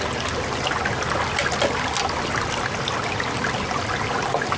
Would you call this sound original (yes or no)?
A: yes